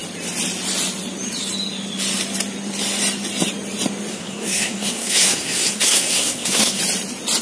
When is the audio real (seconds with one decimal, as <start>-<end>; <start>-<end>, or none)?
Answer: 0.0-4.1; 6.8-7.4